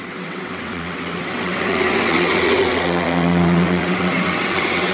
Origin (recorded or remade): remade